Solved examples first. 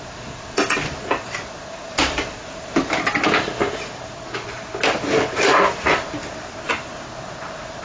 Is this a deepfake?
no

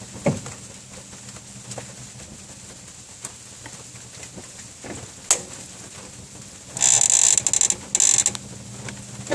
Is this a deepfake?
no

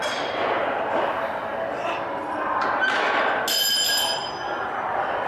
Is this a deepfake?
no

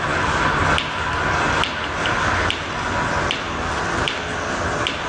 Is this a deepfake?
no